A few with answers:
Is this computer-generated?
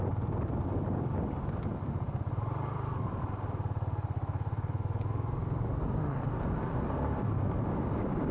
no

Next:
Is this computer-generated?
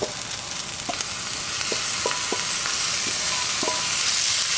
no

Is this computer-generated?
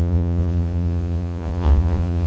yes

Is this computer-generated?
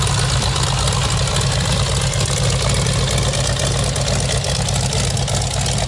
no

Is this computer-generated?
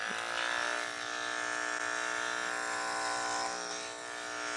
no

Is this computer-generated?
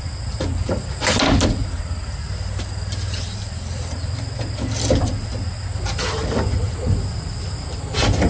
no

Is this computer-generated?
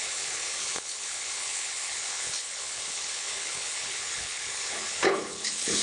yes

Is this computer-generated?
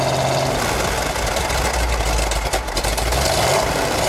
no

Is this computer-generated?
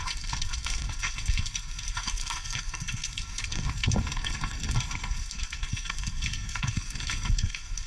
yes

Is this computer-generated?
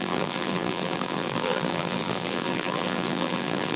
yes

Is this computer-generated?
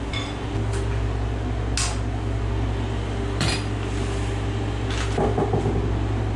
no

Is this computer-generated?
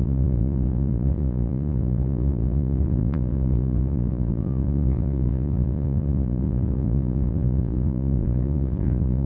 yes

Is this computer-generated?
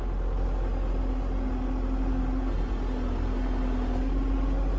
no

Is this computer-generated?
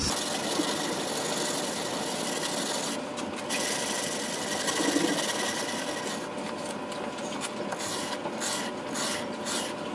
no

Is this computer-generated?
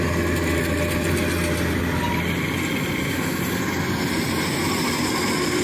no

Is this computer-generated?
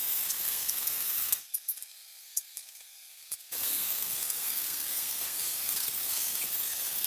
yes